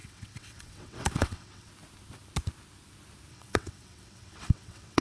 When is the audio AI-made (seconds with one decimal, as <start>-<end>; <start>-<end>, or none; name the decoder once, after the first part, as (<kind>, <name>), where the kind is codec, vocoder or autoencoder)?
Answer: 0.0-1.7 (vocoder, WaveNeXt); 3.3-5.0